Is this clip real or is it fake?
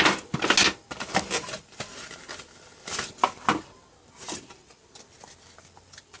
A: real